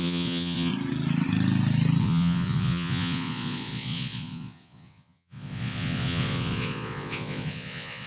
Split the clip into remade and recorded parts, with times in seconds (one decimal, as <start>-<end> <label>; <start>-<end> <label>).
0.0-0.7 remade; 0.7-2.0 recorded; 2.0-8.1 remade